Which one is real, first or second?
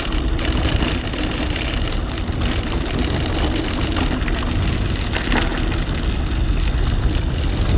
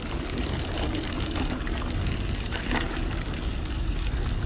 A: first